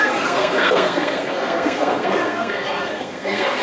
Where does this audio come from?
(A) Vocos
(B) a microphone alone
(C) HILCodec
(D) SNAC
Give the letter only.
D